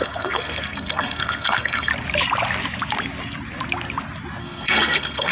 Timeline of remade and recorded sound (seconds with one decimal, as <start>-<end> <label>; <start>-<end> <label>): 0.0-1.9 remade; 1.9-4.4 recorded; 4.4-5.3 remade